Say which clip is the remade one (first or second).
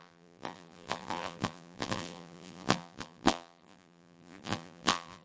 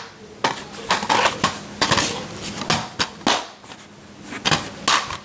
first